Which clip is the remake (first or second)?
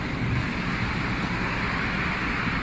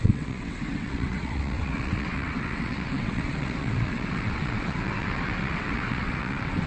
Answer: second